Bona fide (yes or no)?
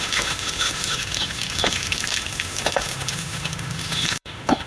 no